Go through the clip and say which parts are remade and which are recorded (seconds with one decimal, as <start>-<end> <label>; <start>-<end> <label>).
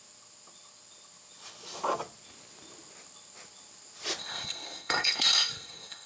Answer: 0.0-4.2 recorded; 4.2-6.1 remade